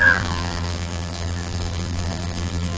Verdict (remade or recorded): remade